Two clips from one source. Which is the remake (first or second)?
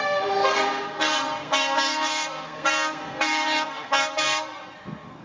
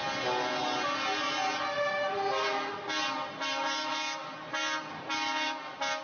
first